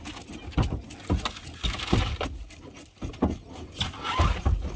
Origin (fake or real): real